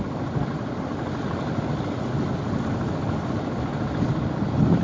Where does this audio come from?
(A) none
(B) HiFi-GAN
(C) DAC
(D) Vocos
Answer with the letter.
A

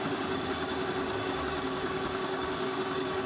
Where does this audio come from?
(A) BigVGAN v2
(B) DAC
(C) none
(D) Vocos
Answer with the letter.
B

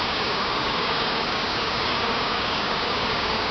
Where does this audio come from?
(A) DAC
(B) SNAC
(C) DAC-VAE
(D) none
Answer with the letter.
A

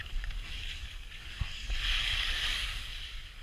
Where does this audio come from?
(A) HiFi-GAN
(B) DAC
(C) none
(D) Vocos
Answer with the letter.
B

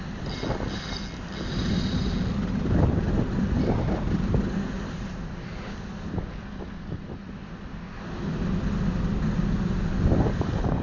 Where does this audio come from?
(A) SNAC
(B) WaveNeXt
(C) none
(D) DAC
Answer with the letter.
C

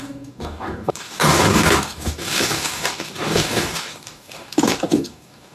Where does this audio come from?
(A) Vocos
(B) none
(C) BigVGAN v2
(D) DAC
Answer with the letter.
D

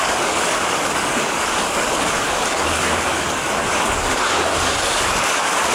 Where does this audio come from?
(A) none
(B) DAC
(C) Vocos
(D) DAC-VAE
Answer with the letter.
B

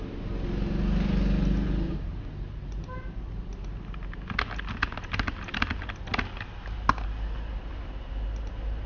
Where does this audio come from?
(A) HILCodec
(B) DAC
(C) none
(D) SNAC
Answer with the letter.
C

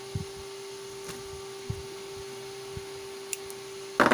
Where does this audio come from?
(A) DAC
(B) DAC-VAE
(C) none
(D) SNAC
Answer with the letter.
C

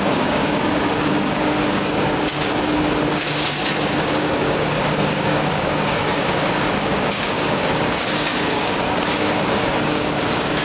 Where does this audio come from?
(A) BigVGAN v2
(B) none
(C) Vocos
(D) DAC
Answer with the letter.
D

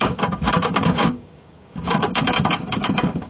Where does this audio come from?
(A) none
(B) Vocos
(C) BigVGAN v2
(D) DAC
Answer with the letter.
D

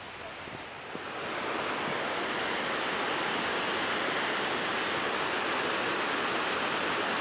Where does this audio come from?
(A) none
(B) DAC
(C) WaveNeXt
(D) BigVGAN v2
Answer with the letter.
A